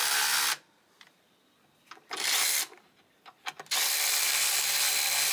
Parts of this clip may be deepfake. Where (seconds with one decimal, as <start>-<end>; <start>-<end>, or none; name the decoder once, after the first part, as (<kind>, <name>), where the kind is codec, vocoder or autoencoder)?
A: 0.0-5.3 (vocoder, BigVGAN v2)